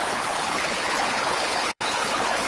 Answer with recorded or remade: remade